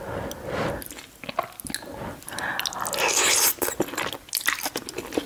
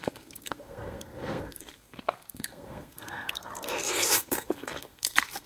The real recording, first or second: first